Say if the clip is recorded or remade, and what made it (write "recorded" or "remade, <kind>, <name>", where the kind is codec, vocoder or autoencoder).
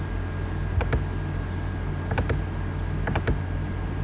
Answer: recorded